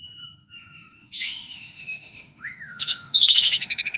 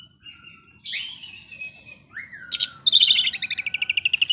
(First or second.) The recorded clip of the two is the second